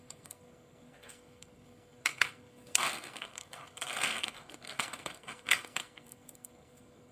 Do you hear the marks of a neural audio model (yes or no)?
yes